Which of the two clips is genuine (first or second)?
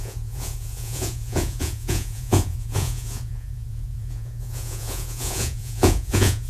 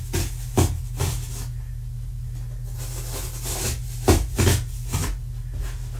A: second